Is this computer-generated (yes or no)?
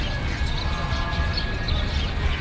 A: no